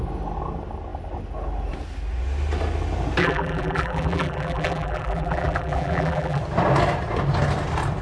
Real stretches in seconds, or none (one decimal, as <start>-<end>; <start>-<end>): 0.0-3.2; 6.4-8.0